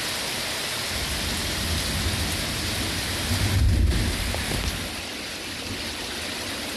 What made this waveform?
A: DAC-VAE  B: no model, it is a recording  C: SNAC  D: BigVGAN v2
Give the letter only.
B